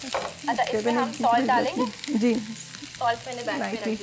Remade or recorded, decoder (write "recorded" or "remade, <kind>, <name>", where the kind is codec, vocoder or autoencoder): recorded